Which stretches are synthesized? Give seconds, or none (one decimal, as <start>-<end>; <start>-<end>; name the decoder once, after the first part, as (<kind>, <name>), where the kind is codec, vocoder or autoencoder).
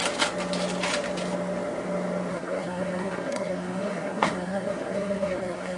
2.3-5.8 (codec, SNAC)